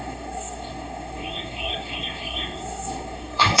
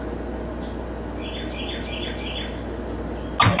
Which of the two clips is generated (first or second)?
first